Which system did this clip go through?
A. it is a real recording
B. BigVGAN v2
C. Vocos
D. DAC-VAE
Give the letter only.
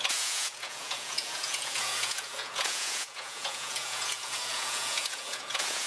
C